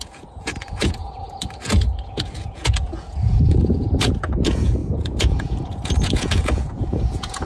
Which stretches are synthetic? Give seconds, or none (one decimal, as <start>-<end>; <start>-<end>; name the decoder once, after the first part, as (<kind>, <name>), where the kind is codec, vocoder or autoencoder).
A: 0.0-7.5 (vocoder, Vocos)